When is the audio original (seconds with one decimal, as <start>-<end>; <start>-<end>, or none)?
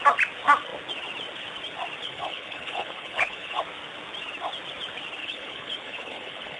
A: 0.0-2.0; 3.6-5.2